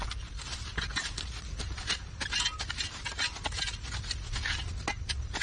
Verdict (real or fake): real